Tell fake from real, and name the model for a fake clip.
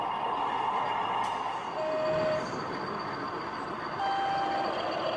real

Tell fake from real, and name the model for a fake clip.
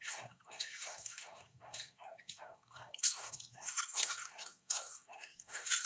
fake, codec, SNAC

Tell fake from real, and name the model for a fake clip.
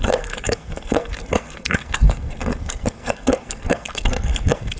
fake, codec, SNAC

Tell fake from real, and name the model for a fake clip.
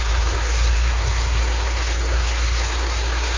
fake, codec, SNAC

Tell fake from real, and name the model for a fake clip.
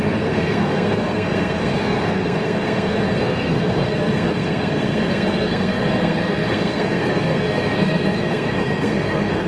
fake, codec, SNAC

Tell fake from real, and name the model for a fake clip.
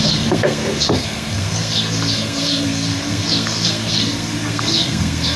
fake, codec, SNAC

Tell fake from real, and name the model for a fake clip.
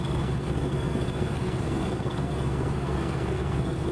fake, codec, SNAC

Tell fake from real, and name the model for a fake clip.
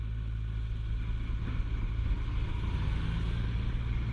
real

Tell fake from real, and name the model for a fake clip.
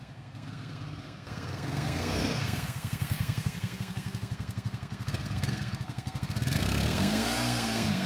fake, codec, SNAC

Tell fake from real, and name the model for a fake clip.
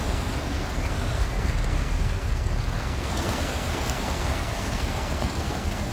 fake, codec, SNAC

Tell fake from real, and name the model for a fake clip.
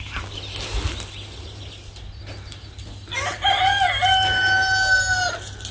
real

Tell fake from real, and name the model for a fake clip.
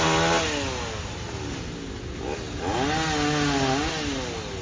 real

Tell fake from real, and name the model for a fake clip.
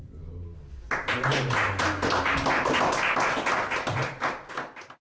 real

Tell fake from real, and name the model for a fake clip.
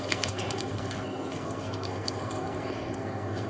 fake, codec, SNAC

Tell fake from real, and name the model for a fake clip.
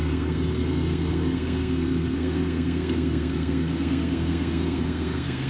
fake, codec, SNAC